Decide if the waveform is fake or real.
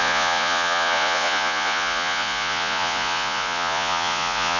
fake